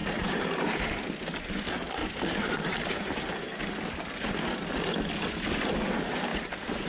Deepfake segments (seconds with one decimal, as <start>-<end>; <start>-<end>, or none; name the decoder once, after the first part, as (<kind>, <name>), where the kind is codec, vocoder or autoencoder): 0.0-1.0 (vocoder, BigVGAN v2); 6.3-6.9